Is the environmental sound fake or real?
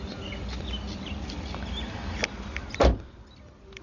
real